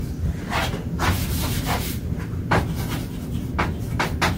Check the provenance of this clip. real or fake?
real